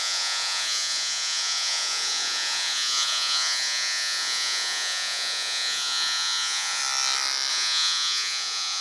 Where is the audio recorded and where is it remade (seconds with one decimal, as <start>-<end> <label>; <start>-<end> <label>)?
0.0-6.8 remade; 6.8-7.5 recorded; 7.5-8.8 remade